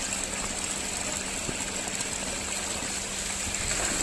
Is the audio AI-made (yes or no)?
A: no